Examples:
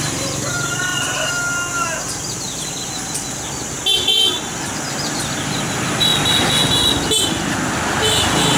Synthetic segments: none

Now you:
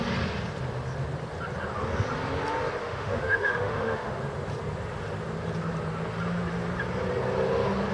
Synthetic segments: 2.8-4.2 (autoencoder, DAC-VAE)

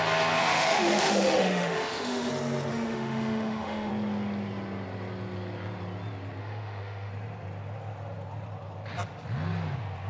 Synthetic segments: 0.4-2.3 (autoencoder, DAC-VAE); 2.7-3.9; 6.4-7.1

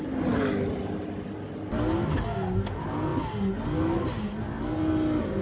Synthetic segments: none

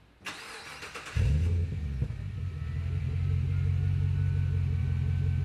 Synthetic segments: none

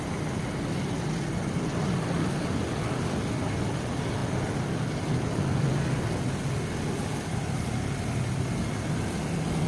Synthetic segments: none